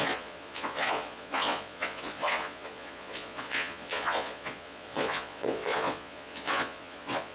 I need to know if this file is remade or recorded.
remade